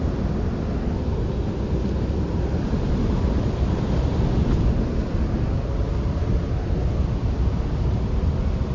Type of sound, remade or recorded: recorded